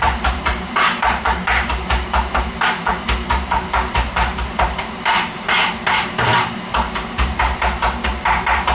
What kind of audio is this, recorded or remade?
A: remade